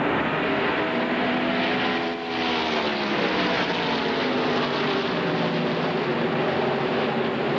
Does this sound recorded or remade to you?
recorded